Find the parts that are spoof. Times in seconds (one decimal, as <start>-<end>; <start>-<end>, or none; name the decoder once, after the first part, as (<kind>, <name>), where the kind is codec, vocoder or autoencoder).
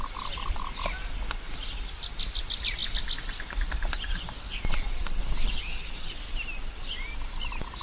none